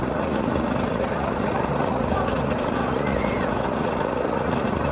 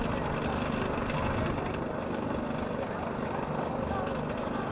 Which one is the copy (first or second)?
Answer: first